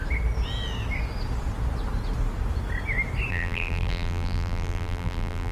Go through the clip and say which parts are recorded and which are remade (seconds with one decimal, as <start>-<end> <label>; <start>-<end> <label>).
0.0-3.3 recorded; 3.3-5.5 remade